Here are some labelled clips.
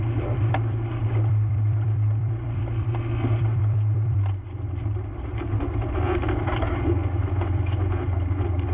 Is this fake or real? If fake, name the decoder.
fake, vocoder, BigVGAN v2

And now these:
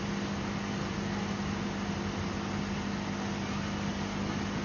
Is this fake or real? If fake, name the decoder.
real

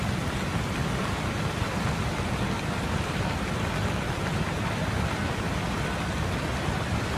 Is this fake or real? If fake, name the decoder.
real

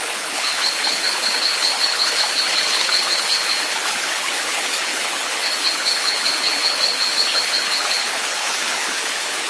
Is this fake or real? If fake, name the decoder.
fake, codec, HILCodec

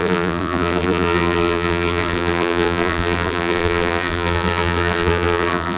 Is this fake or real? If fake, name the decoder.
fake, vocoder, BigVGAN v2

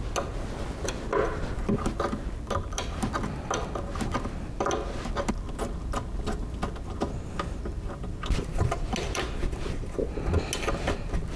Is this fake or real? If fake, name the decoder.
real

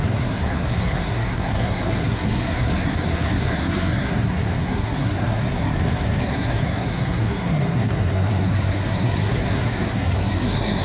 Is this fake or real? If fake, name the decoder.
fake, codec, SNAC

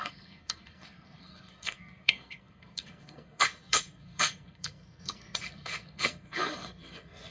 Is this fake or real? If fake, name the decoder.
fake, codec, SNAC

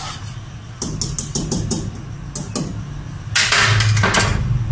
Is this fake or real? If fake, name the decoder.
real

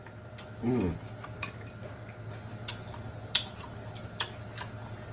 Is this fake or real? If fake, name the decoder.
real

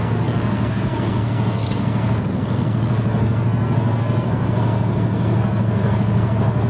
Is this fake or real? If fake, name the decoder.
fake, codec, SNAC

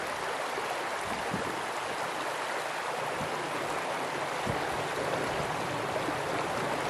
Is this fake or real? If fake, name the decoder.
real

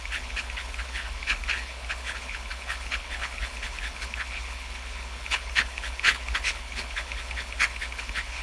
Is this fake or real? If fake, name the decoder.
fake, codec, HILCodec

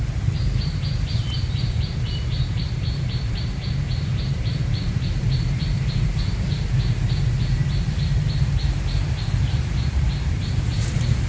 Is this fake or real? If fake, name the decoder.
fake, vocoder, BigVGAN v2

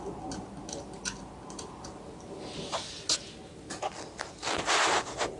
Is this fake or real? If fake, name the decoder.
real